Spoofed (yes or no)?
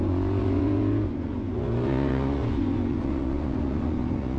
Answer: yes